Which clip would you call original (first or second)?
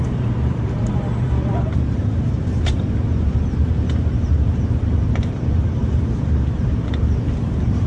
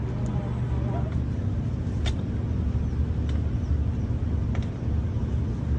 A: second